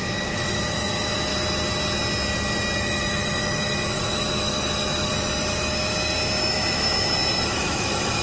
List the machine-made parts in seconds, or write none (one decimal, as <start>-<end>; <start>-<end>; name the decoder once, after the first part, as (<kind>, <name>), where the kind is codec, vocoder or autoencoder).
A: 0.0-1.3 (autoencoder, DAC-VAE); 2.8-5.1; 6.4-8.2